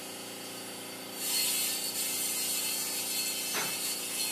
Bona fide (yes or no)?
yes